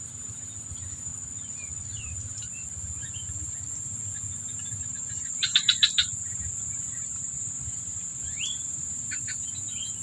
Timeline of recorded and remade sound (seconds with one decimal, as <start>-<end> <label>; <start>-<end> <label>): 0.0-1.1 remade; 1.1-5.3 recorded; 5.3-6.0 remade; 6.0-6.7 recorded; 6.7-10.0 remade